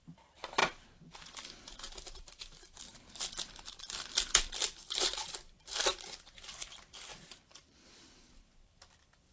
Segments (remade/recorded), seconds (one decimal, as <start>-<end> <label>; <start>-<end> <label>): 0.0-0.6 remade; 0.6-3.1 recorded; 3.1-9.3 remade